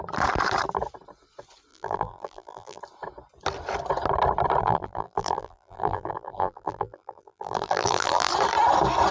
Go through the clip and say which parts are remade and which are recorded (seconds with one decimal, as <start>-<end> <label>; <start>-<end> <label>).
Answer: 0.0-1.7 recorded; 1.7-2.8 remade; 2.8-4.6 recorded; 4.6-8.3 remade; 8.3-9.1 recorded